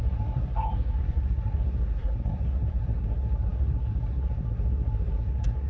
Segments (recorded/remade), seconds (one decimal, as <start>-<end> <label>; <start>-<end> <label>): 0.0-5.7 remade